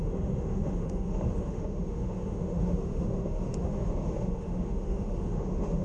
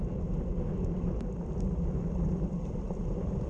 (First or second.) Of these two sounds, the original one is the second